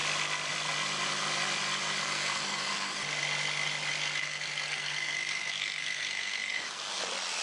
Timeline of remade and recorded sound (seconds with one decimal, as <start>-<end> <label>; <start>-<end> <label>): 0.0-2.0 recorded; 2.0-3.0 remade; 3.0-4.2 recorded; 4.2-7.0 remade; 7.0-7.4 recorded